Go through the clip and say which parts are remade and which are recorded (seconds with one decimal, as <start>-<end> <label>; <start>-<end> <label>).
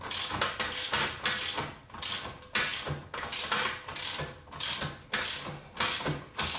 0.0-6.6 recorded